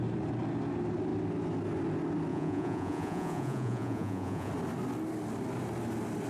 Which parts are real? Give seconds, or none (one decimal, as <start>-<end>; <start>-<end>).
0.0-2.3; 4.5-6.3